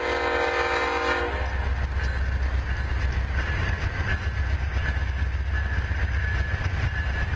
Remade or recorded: recorded